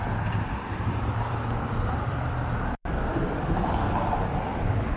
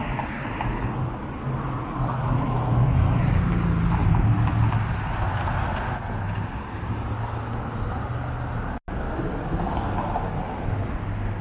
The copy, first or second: first